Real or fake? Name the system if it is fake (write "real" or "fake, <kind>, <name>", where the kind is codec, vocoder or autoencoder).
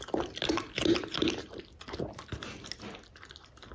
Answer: real